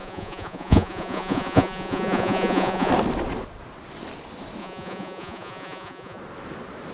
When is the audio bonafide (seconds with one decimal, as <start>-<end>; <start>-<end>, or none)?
2.9-4.6; 6.2-6.9